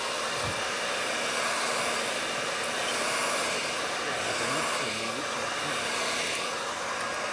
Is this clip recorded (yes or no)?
yes